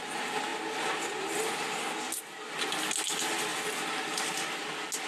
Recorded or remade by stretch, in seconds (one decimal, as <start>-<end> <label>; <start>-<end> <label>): 0.0-5.1 recorded